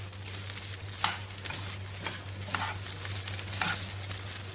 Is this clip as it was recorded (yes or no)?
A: yes